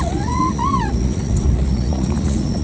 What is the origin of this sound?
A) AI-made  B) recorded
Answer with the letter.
A